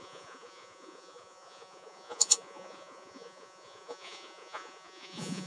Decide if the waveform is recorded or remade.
remade